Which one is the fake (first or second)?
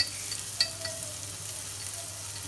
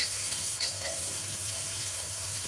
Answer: second